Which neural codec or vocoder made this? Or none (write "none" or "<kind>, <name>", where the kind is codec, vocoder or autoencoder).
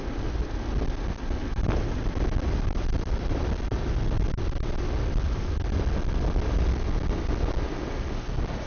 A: none